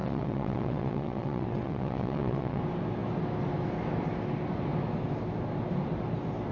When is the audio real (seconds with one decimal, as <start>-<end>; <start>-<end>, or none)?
2.6-6.5